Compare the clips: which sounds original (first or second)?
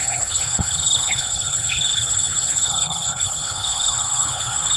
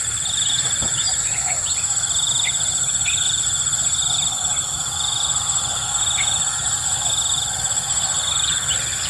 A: second